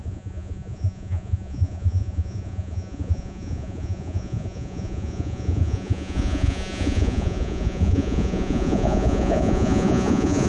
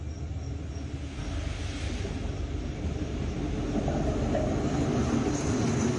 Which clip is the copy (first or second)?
first